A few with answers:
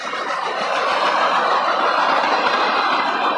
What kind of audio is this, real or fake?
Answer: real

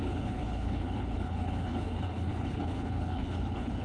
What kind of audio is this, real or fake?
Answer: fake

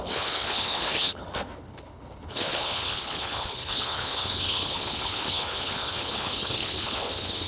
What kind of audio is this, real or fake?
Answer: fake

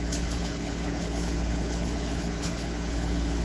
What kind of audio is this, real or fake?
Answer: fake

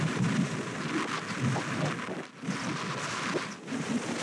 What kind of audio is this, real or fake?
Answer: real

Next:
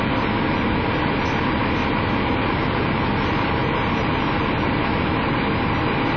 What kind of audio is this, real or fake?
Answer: real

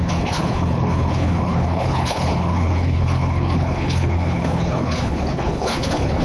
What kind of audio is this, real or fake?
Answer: fake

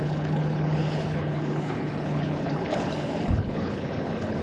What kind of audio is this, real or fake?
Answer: fake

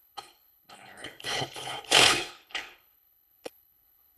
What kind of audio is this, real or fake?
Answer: fake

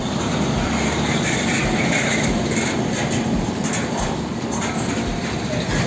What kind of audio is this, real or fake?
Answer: real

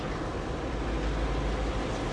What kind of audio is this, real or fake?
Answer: real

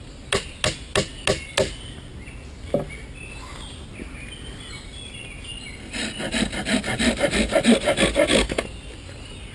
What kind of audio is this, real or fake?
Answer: real